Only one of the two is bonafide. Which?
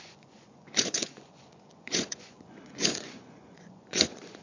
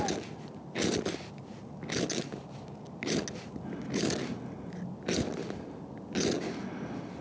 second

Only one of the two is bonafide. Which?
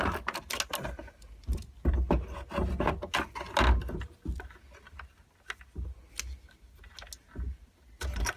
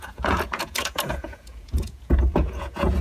first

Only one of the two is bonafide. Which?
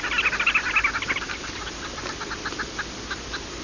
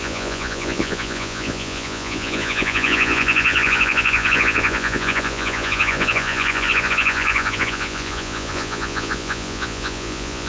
first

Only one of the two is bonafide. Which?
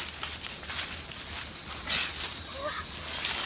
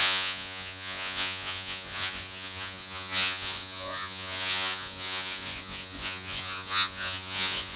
first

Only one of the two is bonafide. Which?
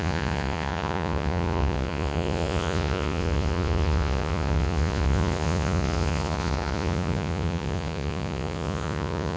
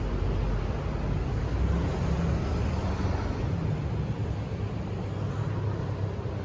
second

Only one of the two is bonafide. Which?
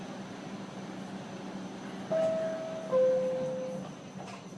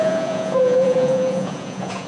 first